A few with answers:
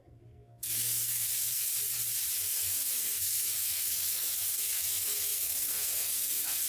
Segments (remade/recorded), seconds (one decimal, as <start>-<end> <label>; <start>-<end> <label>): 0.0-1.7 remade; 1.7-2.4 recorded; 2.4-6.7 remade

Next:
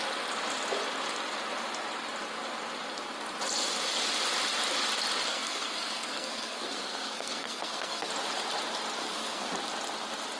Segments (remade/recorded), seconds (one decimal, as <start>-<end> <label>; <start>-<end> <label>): 0.0-5.3 recorded; 5.3-8.1 remade; 8.1-9.0 recorded; 9.0-9.5 remade; 9.5-10.4 recorded

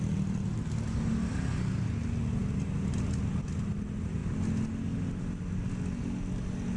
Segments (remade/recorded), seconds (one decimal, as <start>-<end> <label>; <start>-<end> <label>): 0.0-6.8 recorded